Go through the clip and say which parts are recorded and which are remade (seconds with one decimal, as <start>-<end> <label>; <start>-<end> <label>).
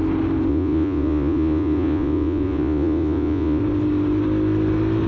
0.0-0.5 recorded; 0.5-3.6 remade; 3.6-5.1 recorded